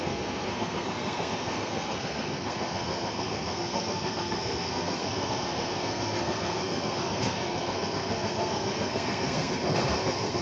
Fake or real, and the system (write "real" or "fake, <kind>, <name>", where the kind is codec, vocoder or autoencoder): fake, codec, SNAC